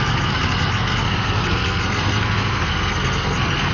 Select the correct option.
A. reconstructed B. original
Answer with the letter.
A